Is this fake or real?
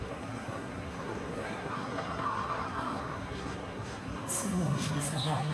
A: fake